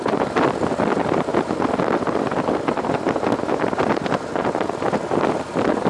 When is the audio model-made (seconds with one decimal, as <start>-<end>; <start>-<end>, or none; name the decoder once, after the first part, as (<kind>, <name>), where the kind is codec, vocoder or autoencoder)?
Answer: none